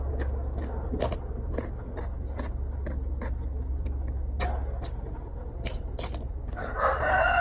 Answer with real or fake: real